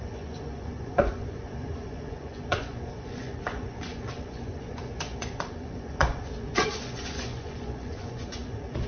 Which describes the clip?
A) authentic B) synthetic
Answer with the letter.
B